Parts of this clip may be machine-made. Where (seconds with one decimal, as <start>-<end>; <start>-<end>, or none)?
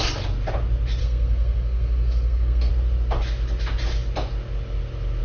1.0-2.7